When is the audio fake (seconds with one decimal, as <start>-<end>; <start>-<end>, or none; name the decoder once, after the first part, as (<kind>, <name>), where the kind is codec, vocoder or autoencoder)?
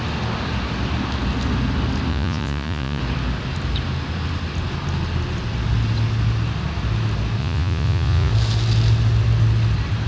2.1-3.0 (vocoder, Vocos); 7.4-8.3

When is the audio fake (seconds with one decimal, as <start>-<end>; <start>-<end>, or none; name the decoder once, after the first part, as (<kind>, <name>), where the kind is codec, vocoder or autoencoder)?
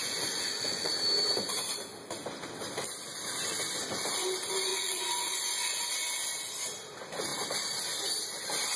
0.0-0.9 (vocoder, Vocos); 4.7-5.9